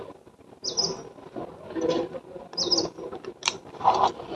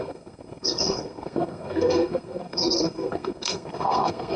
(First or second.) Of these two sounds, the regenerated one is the second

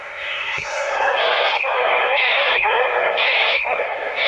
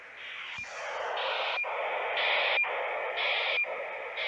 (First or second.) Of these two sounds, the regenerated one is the first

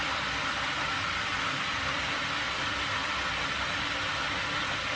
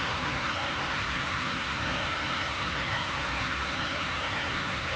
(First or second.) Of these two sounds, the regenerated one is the second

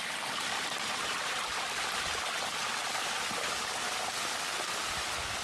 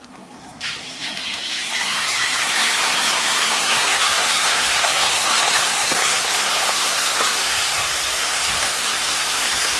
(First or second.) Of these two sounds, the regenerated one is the second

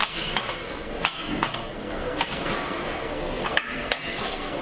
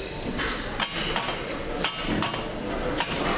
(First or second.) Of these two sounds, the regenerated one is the first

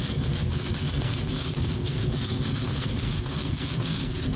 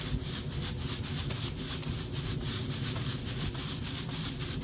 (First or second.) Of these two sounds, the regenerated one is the first